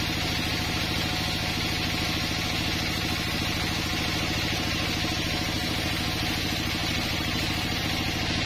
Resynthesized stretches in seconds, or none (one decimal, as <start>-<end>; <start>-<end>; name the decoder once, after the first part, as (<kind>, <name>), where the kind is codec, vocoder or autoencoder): 6.8-7.8 (vocoder, BigVGAN v2)